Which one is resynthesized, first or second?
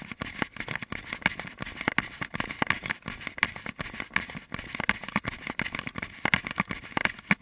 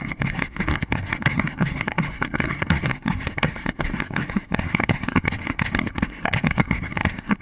second